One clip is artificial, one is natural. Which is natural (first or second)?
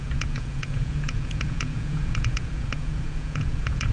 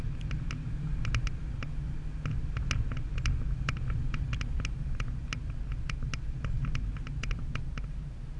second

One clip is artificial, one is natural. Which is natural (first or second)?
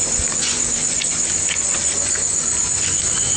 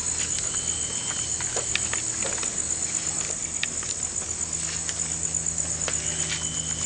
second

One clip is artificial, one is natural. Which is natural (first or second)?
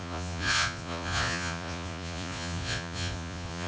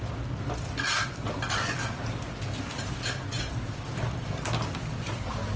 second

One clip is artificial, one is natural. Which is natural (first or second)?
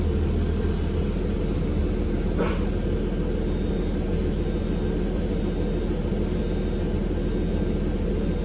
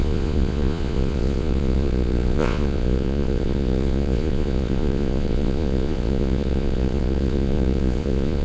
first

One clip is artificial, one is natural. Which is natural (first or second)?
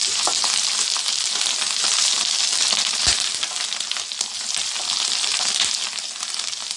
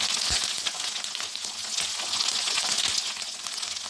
first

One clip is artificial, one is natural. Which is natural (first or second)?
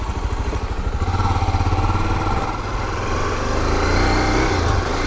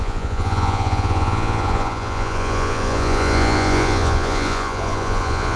first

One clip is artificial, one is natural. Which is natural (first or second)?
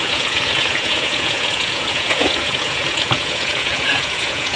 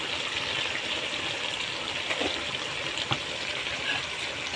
second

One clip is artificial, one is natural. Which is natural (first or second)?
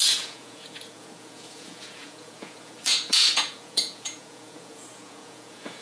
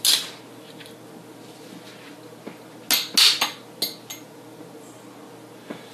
second